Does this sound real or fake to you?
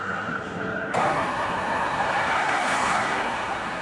fake